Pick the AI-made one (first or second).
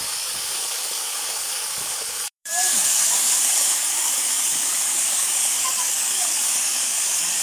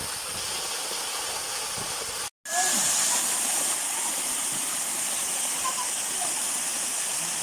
first